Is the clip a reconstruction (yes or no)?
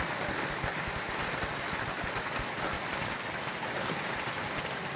no